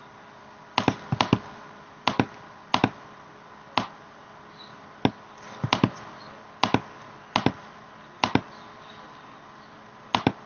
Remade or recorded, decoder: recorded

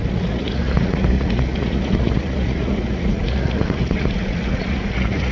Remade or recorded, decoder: remade, vocoder, Vocos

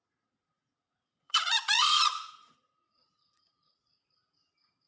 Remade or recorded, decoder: remade, vocoder, Vocos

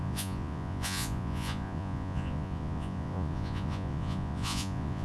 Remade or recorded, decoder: remade, vocoder, Vocos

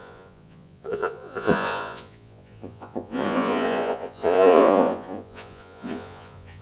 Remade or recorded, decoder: remade, vocoder, Vocos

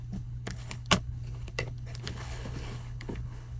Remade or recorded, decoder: remade, codec, HILCodec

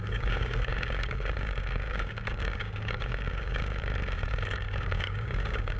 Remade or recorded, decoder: remade, codec, DAC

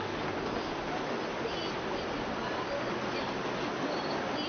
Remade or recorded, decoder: recorded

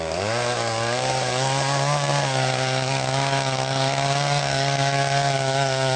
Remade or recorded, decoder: remade, codec, DAC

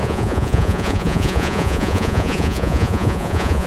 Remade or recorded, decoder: remade, vocoder, Vocos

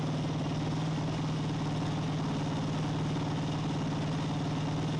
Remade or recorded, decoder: recorded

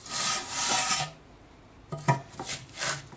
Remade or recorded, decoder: recorded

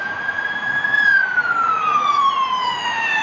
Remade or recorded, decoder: remade, vocoder, Vocos